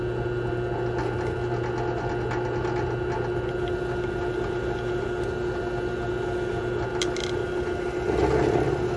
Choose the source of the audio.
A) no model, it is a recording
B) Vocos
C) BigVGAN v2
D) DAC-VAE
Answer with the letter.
A